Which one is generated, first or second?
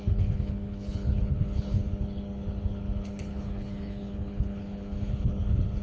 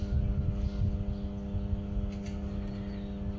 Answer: first